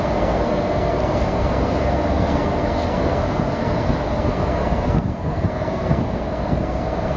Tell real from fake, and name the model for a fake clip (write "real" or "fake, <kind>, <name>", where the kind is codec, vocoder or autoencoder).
fake, codec, SNAC